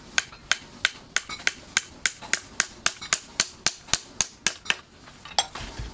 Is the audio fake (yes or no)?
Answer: no